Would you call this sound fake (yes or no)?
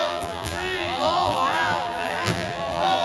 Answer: yes